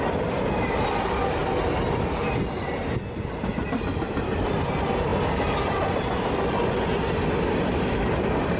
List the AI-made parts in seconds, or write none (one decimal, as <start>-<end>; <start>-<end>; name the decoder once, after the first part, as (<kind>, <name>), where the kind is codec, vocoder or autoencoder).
none